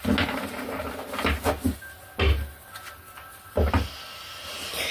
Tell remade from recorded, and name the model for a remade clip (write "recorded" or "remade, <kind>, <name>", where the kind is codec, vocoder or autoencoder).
recorded